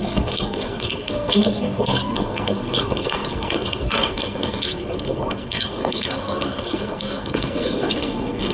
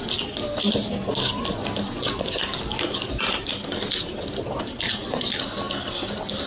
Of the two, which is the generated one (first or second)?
first